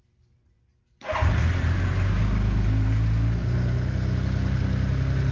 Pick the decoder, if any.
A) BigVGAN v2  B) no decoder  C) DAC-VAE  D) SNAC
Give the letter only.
B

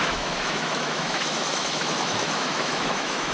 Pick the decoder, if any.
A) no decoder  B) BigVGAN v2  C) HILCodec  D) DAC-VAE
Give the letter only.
D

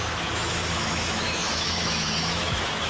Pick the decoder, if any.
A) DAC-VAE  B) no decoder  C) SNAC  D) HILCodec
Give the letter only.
A